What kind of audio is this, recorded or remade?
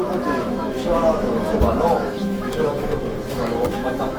remade